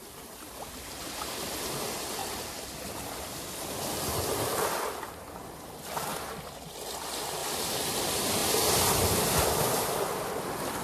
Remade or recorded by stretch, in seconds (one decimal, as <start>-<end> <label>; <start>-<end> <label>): 0.0-2.2 recorded; 2.2-3.8 remade; 3.8-7.4 recorded; 7.4-8.0 remade; 8.0-10.8 recorded